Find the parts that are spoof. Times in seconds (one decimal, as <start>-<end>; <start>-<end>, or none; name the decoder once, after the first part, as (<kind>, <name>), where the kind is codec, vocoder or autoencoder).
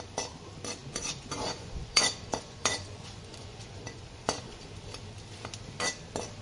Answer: 0.8-4.6 (vocoder, Vocos)